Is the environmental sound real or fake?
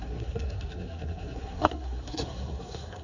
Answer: fake